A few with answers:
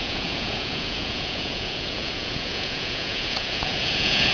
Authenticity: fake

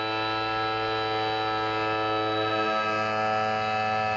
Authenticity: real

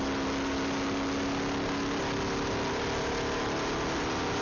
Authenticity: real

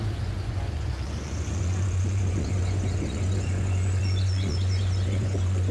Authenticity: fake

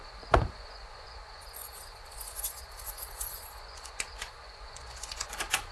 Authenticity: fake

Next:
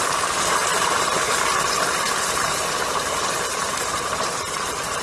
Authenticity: real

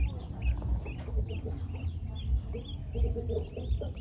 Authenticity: real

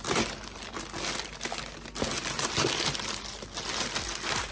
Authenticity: real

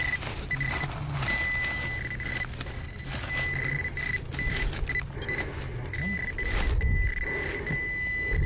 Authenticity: real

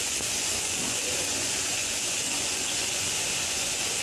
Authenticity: fake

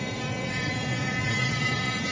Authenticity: fake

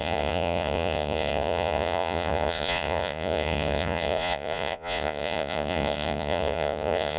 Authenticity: fake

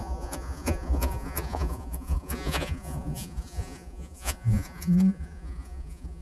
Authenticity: fake